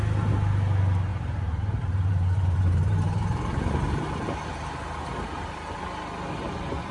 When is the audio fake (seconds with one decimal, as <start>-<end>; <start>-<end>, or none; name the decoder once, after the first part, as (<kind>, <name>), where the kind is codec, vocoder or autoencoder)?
1.1-3.9 (vocoder, BigVGAN v2); 5.0-5.7